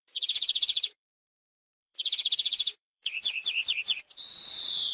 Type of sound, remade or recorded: remade